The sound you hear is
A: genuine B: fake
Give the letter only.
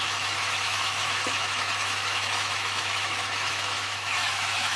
B